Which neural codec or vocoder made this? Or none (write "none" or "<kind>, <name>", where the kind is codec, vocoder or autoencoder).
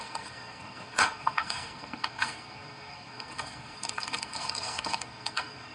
codec, SNAC